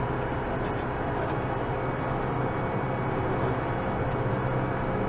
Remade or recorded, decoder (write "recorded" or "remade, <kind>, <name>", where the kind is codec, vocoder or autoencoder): recorded